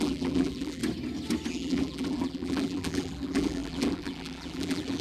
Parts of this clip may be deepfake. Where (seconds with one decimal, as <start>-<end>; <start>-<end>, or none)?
0.0-0.8; 1.5-5.0

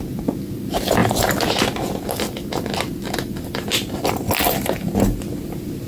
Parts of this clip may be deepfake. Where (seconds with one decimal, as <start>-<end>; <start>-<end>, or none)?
none

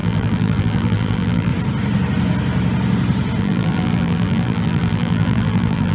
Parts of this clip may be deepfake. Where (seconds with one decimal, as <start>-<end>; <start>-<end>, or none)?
0.0-1.5; 3.4-5.9

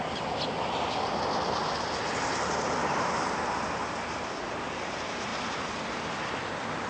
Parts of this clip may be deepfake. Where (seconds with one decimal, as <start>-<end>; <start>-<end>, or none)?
2.8-3.8; 5.3-6.9

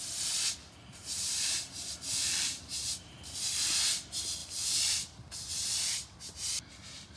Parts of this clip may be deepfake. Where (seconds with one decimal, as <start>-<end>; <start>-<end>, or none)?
0.6-3.7; 4.4-5.5

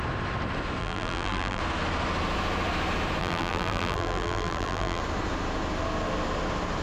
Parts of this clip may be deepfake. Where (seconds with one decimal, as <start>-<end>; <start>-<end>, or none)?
0.8-1.6; 3.2-5.0

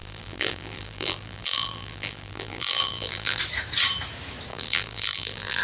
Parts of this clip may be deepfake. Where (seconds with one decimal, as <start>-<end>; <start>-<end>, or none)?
0.0-3.4; 4.5-5.6

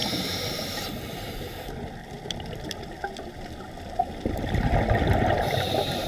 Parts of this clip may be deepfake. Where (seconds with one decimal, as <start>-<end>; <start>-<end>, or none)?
0.0-1.6